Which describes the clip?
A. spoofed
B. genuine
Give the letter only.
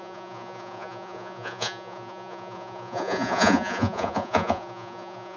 A